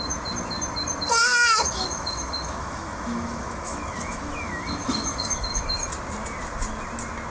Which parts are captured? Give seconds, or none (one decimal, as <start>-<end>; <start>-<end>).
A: 0.0-1.2; 5.6-7.3